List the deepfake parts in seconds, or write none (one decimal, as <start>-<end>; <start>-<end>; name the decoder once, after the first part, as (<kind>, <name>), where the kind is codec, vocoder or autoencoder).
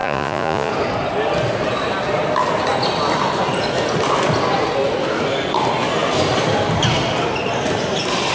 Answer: 0.0-0.7 (vocoder, Vocos)